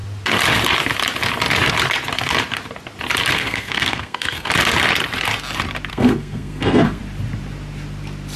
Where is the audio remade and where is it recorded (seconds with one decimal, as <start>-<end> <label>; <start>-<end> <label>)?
0.0-3.3 recorded; 3.3-4.5 remade; 4.5-5.9 recorded; 5.9-7.0 remade; 7.0-8.4 recorded